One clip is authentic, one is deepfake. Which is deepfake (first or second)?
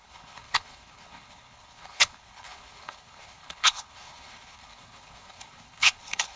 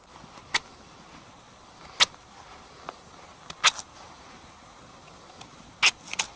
first